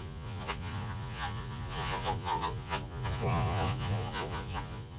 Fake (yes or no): yes